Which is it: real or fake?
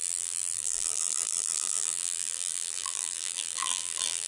fake